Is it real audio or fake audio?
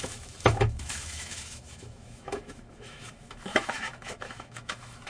fake